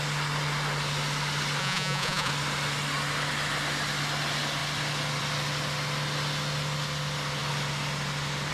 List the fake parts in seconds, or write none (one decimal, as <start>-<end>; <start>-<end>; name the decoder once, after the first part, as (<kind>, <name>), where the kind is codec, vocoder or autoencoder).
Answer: 1.6-2.3 (vocoder, Vocos)